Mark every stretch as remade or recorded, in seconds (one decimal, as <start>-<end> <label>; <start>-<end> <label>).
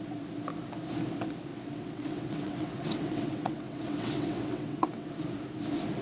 0.0-1.5 recorded; 1.5-5.1 remade; 5.1-6.0 recorded